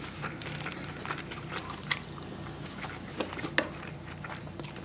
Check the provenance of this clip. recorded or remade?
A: recorded